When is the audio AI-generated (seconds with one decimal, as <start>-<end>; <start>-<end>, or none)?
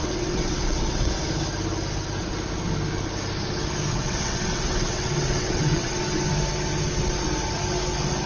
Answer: 0.0-1.1; 3.9-5.9